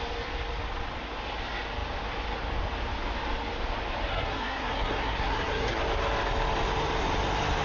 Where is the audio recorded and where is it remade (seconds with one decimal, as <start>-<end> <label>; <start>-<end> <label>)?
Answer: 0.0-4.1 recorded; 4.1-5.8 remade; 5.8-7.6 recorded